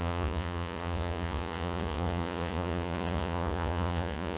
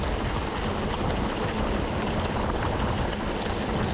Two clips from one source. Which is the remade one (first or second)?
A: first